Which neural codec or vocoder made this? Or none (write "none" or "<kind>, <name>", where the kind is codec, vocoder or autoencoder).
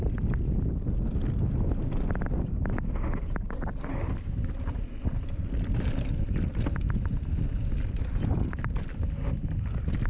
none